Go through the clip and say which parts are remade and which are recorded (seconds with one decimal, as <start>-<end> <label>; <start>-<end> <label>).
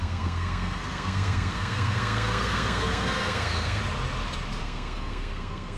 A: 0.0-3.8 remade; 3.8-4.6 recorded; 4.6-5.8 remade